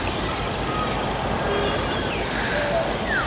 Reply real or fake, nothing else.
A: real